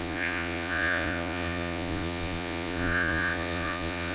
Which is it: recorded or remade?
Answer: remade